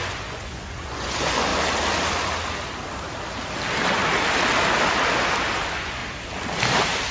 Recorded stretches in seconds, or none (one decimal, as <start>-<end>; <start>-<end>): 1.5-5.6; 6.0-7.1

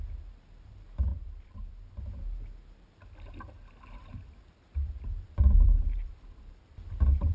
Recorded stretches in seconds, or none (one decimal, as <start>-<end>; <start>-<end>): 0.0-1.1; 2.0-4.0; 6.5-7.3

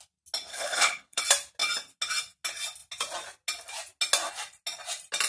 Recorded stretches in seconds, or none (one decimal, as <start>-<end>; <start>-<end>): 0.0-0.5; 1.2-5.3